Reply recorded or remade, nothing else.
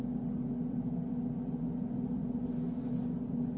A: recorded